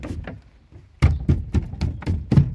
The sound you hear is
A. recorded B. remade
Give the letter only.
A